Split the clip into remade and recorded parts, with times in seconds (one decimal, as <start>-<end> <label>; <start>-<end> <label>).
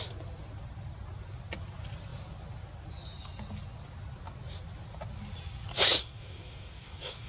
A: 0.0-6.0 recorded; 6.0-7.3 remade